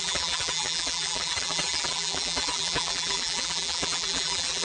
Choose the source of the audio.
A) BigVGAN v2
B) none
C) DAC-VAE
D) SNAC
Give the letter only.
A